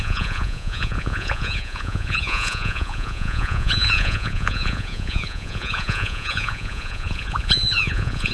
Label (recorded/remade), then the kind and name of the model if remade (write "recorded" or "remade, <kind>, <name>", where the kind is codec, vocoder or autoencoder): remade, vocoder, Vocos